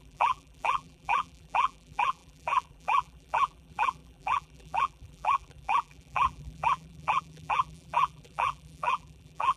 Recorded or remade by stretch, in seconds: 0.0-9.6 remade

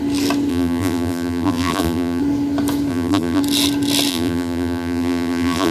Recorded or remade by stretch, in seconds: 0.0-0.5 recorded; 0.5-2.2 remade; 2.2-2.9 recorded; 2.9-3.4 remade; 3.4-4.1 recorded; 4.1-5.7 remade

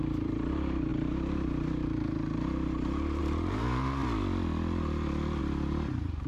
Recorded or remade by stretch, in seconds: 0.0-4.0 remade; 4.0-5.4 recorded; 5.4-6.3 remade

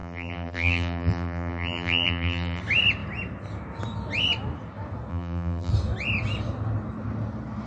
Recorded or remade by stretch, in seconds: 0.0-2.6 remade; 2.6-5.1 recorded; 5.1-5.7 remade; 5.7-7.7 recorded

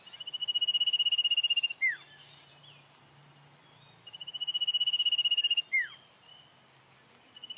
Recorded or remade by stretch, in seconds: 0.0-7.6 recorded

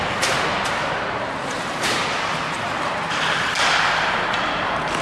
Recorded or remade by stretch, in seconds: 0.0-0.5 recorded; 0.5-3.5 remade; 3.5-5.0 recorded

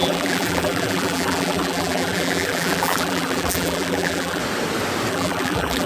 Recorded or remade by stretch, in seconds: 0.0-4.4 remade; 4.4-5.1 recorded; 5.1-5.9 remade